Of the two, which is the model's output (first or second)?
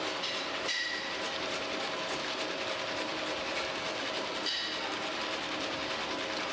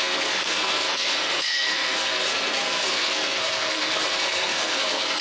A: second